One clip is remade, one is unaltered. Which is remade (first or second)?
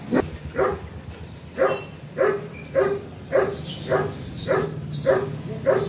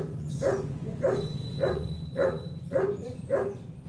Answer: second